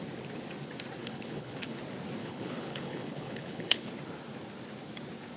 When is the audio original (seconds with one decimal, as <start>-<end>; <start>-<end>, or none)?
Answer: 0.0-1.0; 1.8-2.2; 3.9-5.4